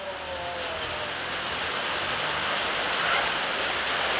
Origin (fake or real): real